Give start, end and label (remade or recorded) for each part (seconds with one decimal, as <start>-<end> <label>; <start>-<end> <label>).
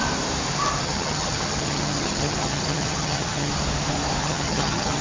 0.0-0.8 recorded; 0.8-3.5 remade; 3.5-4.2 recorded; 4.2-5.0 remade